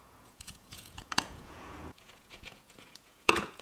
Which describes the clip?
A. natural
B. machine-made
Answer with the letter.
B